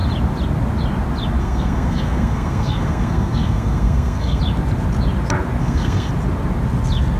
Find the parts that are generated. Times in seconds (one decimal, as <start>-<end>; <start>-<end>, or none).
1.4-4.4; 5.6-6.1